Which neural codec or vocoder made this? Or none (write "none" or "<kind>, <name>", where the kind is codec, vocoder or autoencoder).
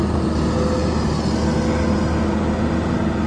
none